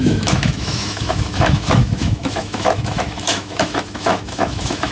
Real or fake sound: fake